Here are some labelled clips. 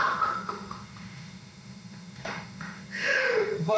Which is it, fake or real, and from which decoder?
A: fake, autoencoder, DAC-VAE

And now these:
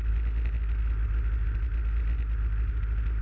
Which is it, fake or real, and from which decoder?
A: real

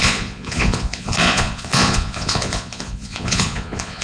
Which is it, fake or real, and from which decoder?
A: fake, vocoder, Vocos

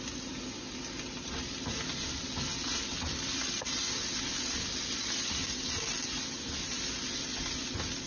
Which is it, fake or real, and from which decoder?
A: real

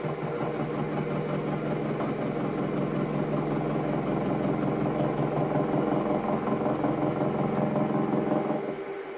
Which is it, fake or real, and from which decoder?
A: real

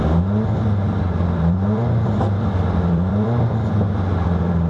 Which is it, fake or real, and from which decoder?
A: fake, vocoder, BigVGAN v2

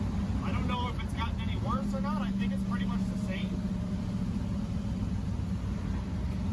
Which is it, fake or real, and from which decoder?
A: real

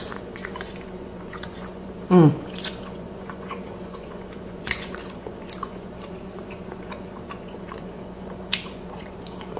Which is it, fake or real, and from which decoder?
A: fake, vocoder, Vocos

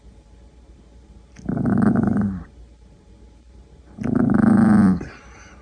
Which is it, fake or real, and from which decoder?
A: fake, vocoder, BigVGAN v2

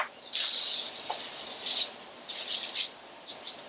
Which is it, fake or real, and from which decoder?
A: real